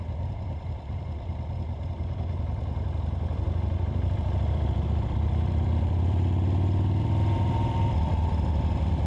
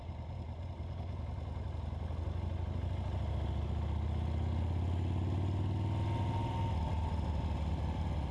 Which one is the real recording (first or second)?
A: second